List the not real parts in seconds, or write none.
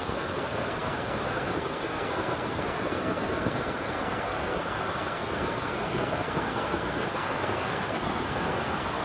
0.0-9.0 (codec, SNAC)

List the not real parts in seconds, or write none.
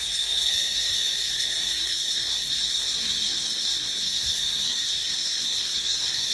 0.0-6.3 (codec, SNAC)